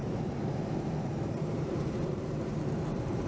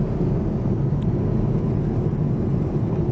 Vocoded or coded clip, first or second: first